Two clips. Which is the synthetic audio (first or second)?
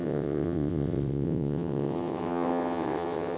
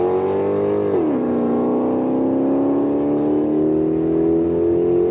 first